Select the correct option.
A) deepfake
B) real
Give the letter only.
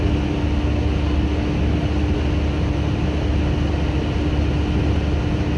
B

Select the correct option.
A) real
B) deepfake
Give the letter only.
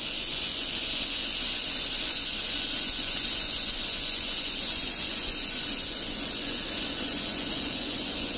B